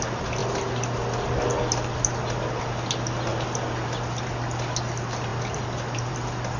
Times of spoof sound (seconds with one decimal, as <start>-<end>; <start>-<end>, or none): none